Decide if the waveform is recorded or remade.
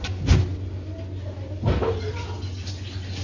recorded